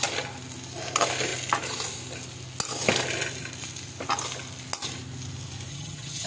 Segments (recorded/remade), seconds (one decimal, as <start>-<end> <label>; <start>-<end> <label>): 0.0-5.7 recorded; 5.7-6.3 remade

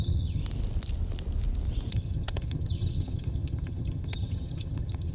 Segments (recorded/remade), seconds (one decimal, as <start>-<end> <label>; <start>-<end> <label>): 0.0-0.4 remade; 0.4-1.9 recorded; 1.9-5.1 remade

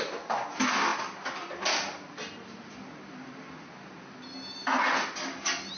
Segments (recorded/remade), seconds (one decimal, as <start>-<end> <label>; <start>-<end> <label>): 0.0-5.8 recorded

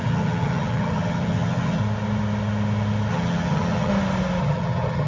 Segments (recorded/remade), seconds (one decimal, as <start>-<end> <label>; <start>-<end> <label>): 0.0-1.8 remade; 1.8-3.1 recorded; 3.1-3.9 remade; 3.9-4.4 recorded; 4.4-5.1 remade